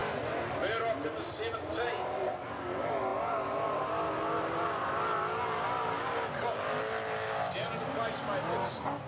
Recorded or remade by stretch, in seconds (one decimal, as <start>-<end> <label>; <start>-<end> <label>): 0.0-9.1 recorded